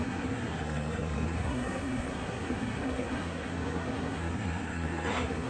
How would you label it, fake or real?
fake